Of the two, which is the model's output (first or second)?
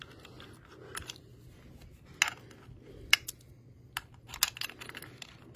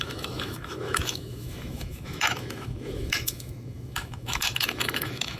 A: second